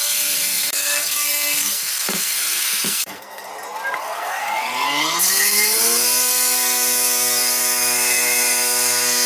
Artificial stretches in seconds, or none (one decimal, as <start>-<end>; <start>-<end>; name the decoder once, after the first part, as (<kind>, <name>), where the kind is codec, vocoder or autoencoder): 0.0-3.5 (codec, SNAC); 4.0-9.3